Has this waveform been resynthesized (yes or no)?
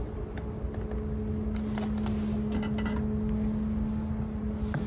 no